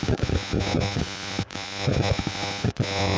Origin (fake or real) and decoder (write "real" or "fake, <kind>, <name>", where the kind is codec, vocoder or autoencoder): fake, vocoder, Vocos